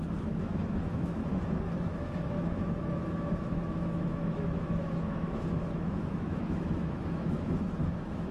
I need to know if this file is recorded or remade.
remade